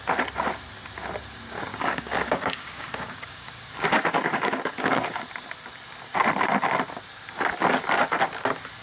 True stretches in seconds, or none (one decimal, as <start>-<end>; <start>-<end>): 0.0-1.7; 5.2-8.8